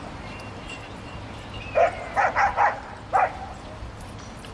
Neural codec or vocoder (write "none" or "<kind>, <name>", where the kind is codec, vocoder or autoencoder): vocoder, BigVGAN v2